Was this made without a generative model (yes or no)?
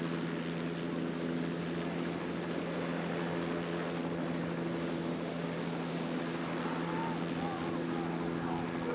yes